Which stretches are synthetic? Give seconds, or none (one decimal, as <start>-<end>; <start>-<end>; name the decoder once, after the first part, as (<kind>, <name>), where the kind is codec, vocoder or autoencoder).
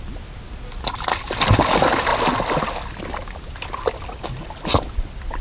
none